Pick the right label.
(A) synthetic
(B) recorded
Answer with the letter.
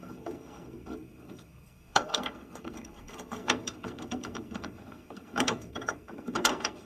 A